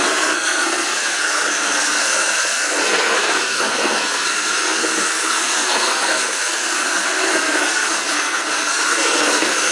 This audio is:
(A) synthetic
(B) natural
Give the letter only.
A